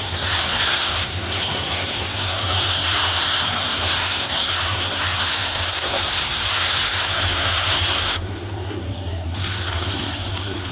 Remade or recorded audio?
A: remade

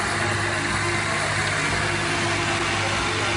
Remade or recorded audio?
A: recorded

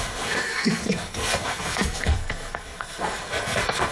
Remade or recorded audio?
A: remade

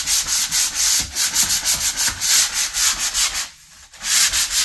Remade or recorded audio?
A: recorded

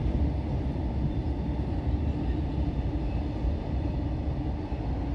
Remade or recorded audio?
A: recorded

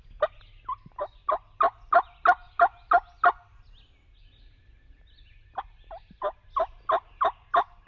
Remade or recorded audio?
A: recorded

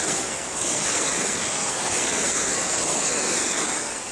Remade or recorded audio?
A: remade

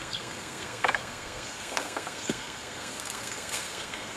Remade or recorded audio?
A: remade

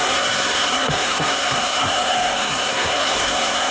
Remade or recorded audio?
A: remade